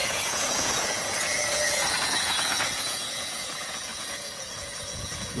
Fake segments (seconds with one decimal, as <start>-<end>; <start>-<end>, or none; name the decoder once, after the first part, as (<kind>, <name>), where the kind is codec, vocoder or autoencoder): 0.0-5.4 (vocoder, Vocos)